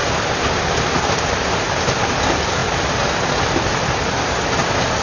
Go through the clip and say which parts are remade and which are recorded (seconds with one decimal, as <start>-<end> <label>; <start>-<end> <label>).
0.0-5.0 recorded